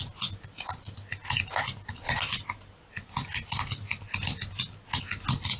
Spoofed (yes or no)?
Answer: no